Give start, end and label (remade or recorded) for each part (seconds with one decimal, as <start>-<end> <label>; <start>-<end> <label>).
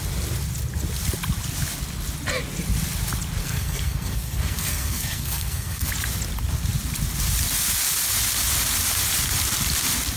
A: 0.0-3.4 recorded; 3.4-5.9 remade; 5.9-10.2 recorded